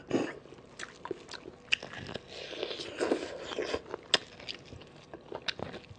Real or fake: real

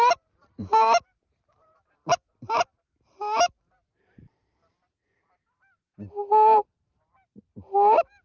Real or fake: fake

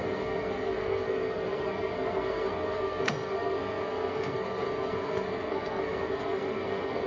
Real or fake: fake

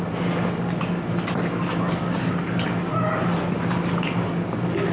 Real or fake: real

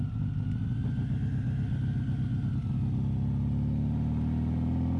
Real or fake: real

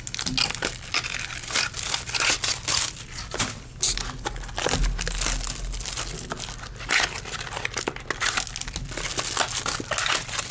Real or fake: real